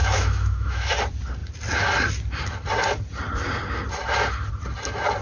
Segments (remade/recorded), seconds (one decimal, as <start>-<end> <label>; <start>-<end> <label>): 0.0-0.9 remade; 0.9-5.2 recorded